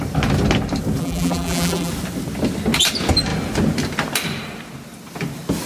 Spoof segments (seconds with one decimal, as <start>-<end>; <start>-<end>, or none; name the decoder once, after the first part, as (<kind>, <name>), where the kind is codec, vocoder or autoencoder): 1.0-1.9 (vocoder, BigVGAN v2)